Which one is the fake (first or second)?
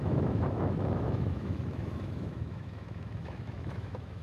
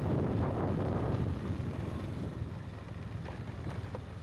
first